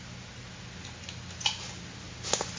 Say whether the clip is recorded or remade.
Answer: recorded